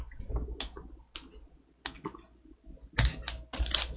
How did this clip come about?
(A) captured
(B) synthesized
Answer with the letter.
A